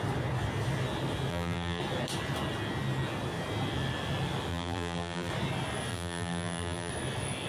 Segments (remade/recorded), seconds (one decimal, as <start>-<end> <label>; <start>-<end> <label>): 0.0-1.3 recorded; 1.3-1.8 remade; 1.8-4.5 recorded; 4.5-5.3 remade; 5.3-5.9 recorded; 5.9-6.9 remade; 6.9-7.5 recorded